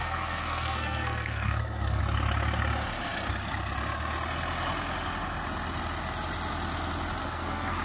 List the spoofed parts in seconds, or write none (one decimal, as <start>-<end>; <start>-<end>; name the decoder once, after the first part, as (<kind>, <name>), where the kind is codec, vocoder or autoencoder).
0.0-2.0 (codec, SNAC); 7.2-7.8